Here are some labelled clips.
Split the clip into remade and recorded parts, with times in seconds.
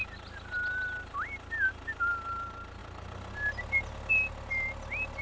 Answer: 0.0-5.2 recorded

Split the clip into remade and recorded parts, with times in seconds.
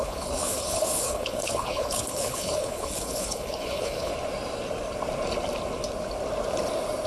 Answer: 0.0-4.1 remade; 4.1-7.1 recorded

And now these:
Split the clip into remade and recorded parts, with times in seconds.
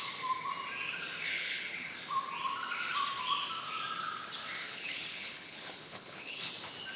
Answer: 0.0-1.3 recorded; 1.3-1.9 remade; 1.9-4.6 recorded; 4.6-6.5 remade; 6.5-7.0 recorded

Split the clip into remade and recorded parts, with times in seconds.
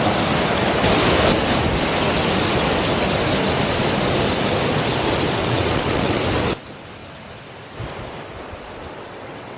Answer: 0.0-5.4 recorded; 5.4-6.2 remade; 6.2-9.0 recorded; 9.0-9.6 remade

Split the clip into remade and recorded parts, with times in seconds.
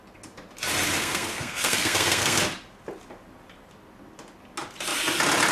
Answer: 0.0-1.0 recorded; 1.0-2.4 remade; 2.4-5.5 recorded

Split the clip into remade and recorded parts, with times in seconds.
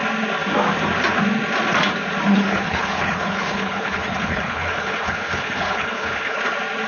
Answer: 0.0-2.3 recorded; 2.3-6.4 remade; 6.4-6.9 recorded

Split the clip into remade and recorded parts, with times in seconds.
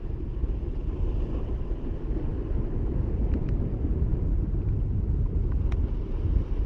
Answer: 0.0-2.3 recorded; 2.3-2.9 remade; 2.9-4.1 recorded; 4.1-4.7 remade; 4.7-6.7 recorded